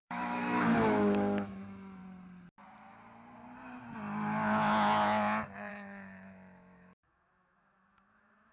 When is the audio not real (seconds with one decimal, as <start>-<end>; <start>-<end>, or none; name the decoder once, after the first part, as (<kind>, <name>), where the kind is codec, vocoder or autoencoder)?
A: 0.0-2.0 (autoencoder, DAC-VAE); 5.7-8.5